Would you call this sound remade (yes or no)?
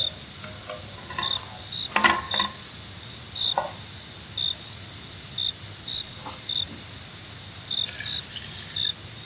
no